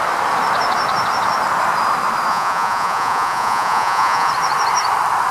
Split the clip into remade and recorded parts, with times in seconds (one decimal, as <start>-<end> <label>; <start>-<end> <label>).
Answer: 0.0-2.3 recorded; 2.3-4.3 remade; 4.3-5.3 recorded